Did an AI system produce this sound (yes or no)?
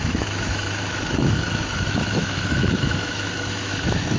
yes